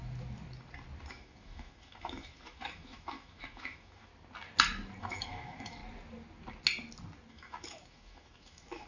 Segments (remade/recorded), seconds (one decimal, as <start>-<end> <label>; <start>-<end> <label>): 0.0-1.1 recorded; 1.1-4.1 remade; 4.1-5.0 recorded; 5.0-5.8 remade; 5.8-7.3 recorded; 7.3-8.9 remade